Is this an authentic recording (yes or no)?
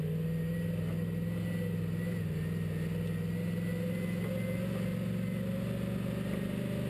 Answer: yes